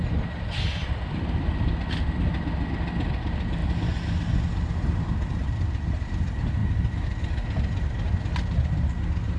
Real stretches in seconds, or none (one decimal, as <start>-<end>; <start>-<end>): 0.0-0.8; 1.7-9.4